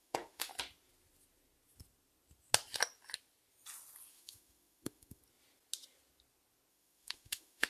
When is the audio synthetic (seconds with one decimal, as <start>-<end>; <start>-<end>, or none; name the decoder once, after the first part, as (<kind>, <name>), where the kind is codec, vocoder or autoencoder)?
0.0-0.5 (autoencoder, DAC-VAE); 4.1-5.2; 6.7-7.7